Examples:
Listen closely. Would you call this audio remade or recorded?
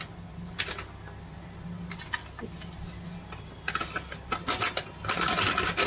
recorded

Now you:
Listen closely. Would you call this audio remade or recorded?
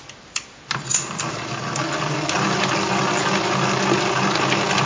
recorded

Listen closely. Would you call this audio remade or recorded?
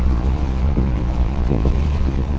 remade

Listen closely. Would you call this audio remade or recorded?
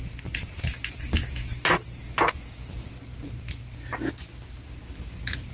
recorded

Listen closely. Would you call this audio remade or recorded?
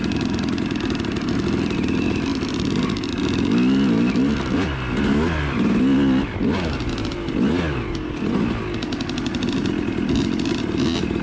recorded